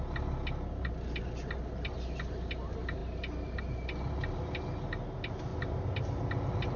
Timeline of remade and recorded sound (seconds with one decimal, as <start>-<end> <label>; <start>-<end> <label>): 0.0-6.8 recorded